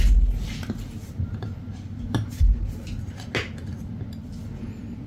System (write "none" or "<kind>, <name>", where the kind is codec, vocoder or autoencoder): none